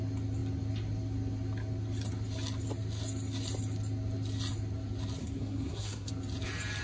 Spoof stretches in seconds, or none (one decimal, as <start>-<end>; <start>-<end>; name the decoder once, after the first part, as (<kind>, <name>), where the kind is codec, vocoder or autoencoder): 5.2-6.1 (codec, SNAC)